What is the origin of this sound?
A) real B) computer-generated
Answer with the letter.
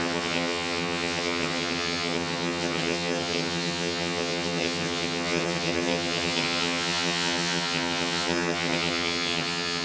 B